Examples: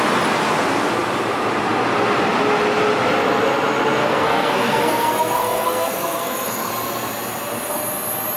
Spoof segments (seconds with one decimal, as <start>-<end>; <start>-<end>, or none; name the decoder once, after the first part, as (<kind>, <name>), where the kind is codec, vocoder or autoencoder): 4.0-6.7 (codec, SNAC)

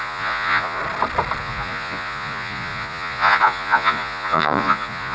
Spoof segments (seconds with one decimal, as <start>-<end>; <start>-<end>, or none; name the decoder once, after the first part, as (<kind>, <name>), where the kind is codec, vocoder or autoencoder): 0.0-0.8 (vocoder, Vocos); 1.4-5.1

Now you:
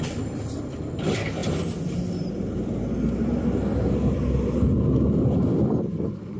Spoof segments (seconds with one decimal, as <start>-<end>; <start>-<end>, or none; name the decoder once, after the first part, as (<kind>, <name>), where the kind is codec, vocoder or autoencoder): none

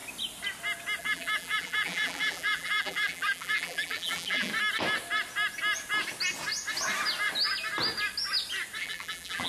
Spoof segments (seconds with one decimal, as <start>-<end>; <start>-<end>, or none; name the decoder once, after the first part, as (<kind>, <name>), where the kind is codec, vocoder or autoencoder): 1.0-4.5 (vocoder, BigVGAN v2); 8.8-9.5

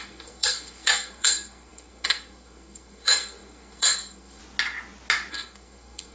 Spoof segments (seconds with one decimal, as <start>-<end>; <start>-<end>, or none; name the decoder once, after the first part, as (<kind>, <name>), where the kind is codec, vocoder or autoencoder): 0.0-4.4 (codec, SNAC); 5.3-6.1